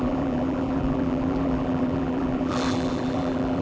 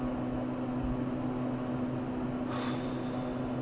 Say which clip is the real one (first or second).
second